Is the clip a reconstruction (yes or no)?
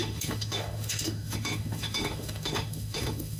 yes